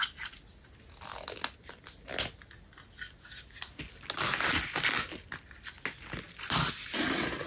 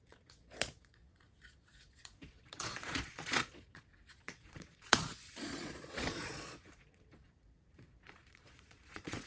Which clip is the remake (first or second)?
second